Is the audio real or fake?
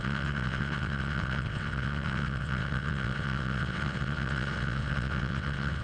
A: fake